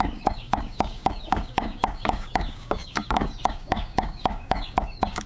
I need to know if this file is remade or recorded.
remade